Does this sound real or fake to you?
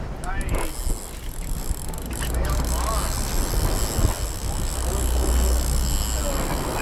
real